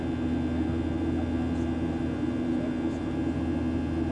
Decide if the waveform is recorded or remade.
recorded